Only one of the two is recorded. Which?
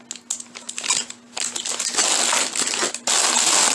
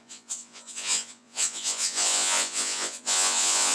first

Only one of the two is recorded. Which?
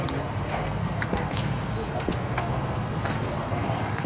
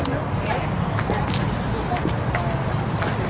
second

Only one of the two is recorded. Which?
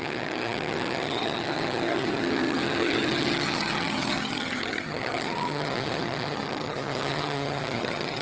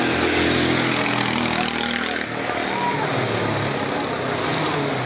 second